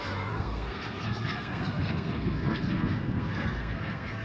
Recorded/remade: remade